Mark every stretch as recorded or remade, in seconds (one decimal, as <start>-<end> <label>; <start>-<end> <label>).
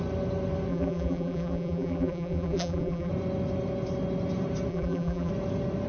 0.0-0.7 recorded; 0.7-3.1 remade; 3.1-4.7 recorded; 4.7-5.3 remade; 5.3-5.9 recorded